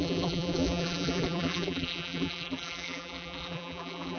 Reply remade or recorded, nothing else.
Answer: remade